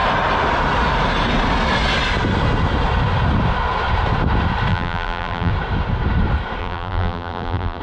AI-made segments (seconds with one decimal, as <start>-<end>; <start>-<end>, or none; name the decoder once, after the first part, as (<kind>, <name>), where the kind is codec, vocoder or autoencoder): 4.7-5.5 (vocoder, BigVGAN v2); 6.6-7.8